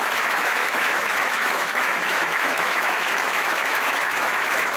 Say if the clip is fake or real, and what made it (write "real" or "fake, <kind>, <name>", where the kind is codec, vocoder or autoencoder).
fake, autoencoder, DAC-VAE